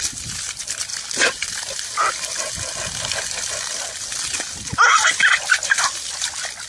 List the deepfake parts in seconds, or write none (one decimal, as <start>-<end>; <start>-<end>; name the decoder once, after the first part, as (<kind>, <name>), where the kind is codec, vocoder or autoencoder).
none